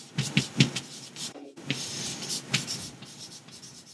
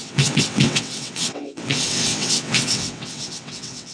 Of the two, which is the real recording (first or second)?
first